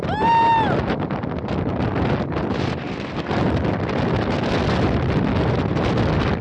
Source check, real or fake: real